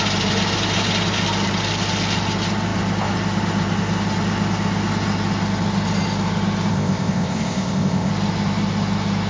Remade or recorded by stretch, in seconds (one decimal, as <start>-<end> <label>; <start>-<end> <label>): 0.0-6.7 recorded; 6.7-8.1 remade; 8.1-9.3 recorded